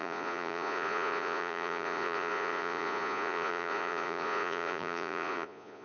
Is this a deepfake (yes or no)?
yes